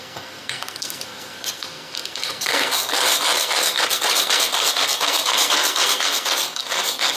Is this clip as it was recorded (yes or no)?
no